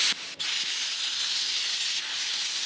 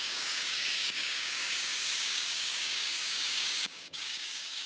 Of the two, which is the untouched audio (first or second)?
first